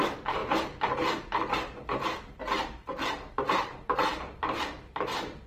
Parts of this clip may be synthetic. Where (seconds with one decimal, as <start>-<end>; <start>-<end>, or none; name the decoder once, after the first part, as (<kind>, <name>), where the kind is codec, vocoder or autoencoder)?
0.0-0.4 (vocoder, BigVGAN v2); 2.4-5.5

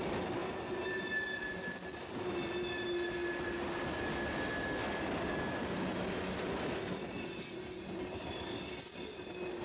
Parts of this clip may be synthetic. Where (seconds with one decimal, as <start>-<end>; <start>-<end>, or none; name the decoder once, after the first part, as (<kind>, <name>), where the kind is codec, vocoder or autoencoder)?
none

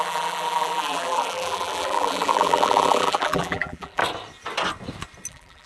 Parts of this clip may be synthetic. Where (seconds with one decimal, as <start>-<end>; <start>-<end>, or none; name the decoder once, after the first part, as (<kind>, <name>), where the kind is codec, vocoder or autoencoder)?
0.0-4.0 (vocoder, BigVGAN v2); 5.3-5.7

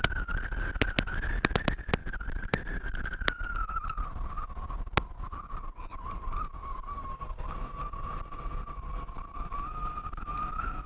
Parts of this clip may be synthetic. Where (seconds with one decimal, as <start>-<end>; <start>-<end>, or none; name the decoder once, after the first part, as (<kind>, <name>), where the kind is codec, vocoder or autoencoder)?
2.0-3.0 (vocoder, BigVGAN v2)

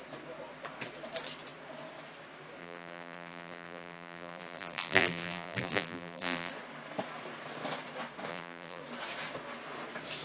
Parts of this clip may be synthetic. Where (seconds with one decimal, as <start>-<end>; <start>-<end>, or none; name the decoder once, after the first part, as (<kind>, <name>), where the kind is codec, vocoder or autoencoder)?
2.6-6.5 (vocoder, BigVGAN v2); 8.3-8.8

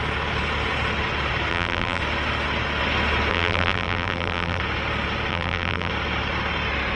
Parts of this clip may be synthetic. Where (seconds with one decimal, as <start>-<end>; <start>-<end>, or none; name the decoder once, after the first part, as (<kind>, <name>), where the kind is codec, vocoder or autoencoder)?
1.5-2.0 (vocoder, BigVGAN v2); 3.3-4.6; 5.3-5.9

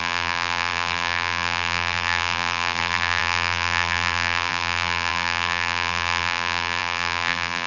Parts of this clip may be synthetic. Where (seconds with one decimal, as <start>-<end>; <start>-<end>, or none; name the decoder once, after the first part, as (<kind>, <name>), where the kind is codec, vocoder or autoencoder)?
0.0-7.7 (vocoder, BigVGAN v2)